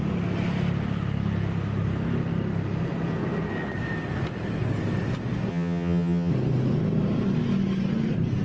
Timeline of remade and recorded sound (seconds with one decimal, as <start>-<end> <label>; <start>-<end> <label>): 0.0-5.5 recorded; 5.5-6.3 remade; 6.3-8.4 recorded